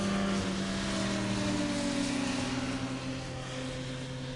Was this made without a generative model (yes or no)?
yes